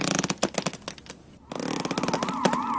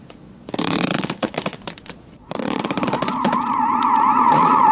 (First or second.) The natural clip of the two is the first